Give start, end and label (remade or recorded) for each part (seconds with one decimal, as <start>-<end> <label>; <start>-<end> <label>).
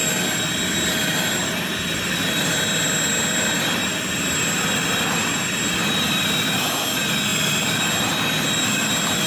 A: 0.0-9.3 recorded